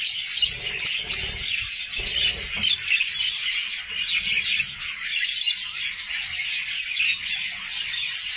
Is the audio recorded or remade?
recorded